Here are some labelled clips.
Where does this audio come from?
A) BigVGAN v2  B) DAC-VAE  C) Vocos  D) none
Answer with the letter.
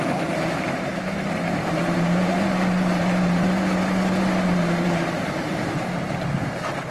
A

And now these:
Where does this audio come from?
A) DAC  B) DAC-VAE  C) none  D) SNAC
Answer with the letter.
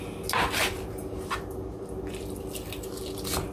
C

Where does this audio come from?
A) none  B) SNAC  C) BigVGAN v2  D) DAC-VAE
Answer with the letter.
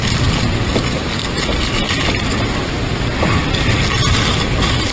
C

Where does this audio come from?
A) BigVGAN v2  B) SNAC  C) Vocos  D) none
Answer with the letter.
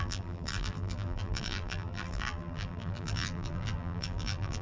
A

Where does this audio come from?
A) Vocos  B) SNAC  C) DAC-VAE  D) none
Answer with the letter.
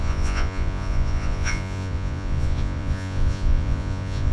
A